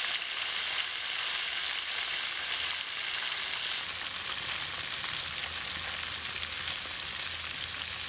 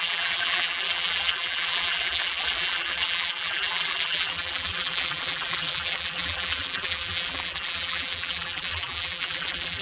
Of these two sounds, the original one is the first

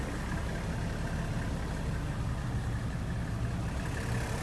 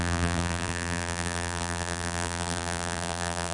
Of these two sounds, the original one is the first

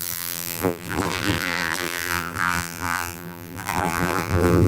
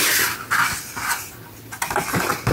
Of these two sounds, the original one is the second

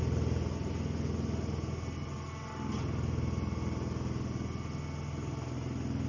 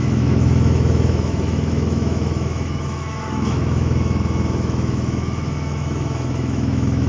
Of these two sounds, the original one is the first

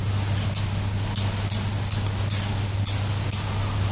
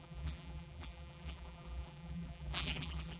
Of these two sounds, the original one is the first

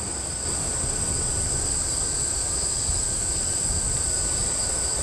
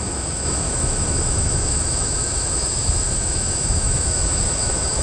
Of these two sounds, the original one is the first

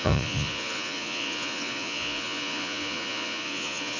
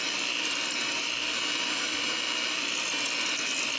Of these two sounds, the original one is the second